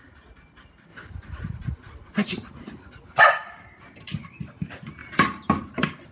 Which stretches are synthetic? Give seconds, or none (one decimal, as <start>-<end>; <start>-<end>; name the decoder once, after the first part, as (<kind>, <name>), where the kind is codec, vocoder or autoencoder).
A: 0.9-3.2 (vocoder, BigVGAN v2); 5.0-5.5